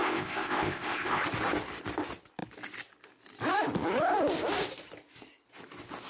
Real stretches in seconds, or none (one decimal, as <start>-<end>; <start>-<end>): 1.2-6.1